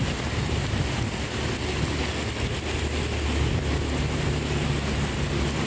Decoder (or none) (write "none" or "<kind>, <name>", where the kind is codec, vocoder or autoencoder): none